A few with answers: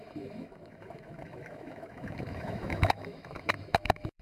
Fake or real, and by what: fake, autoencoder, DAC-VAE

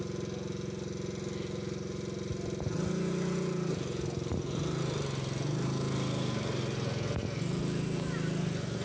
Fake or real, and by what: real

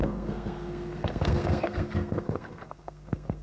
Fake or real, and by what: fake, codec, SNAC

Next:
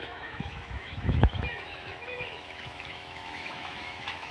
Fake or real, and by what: fake, autoencoder, DAC-VAE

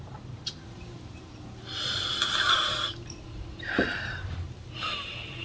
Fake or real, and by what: fake, vocoder, BigVGAN v2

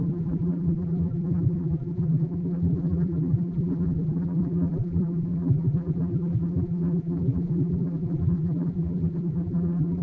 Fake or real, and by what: fake, vocoder, BigVGAN v2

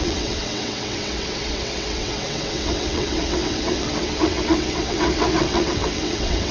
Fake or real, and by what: fake, vocoder, WaveNeXt